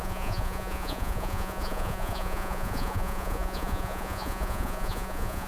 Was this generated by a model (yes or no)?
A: yes